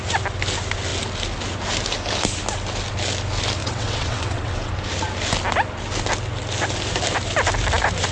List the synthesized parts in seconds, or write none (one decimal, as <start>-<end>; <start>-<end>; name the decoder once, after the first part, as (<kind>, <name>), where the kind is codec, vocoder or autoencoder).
3.6-4.7 (vocoder, WaveNeXt)